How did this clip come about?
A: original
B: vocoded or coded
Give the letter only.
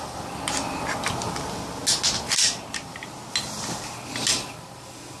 A